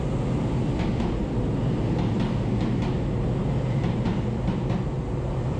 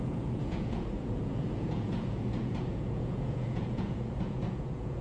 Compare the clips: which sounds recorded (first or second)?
first